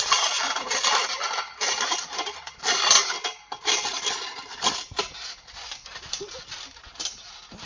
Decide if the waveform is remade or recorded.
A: remade